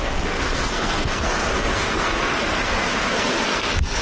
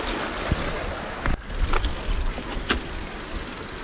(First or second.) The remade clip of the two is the first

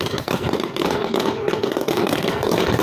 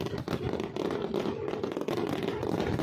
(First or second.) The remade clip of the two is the first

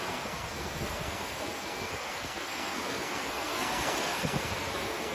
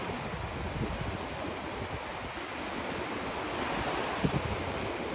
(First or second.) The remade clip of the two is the first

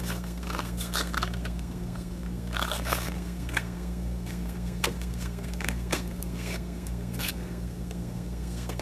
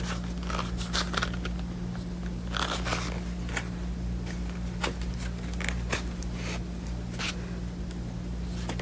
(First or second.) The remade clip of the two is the first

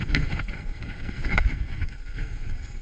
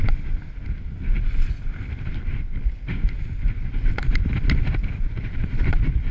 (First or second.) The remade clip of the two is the first